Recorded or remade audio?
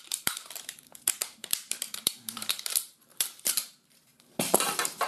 remade